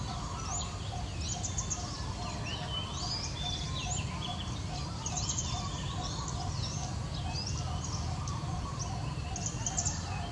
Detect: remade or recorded recorded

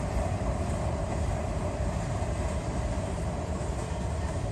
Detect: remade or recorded recorded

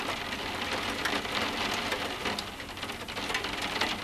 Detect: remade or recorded recorded